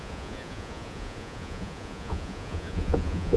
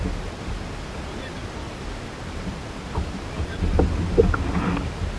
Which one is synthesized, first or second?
first